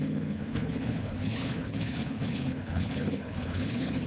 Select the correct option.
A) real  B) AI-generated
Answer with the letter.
B